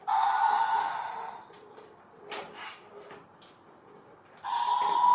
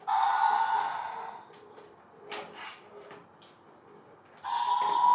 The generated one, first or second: first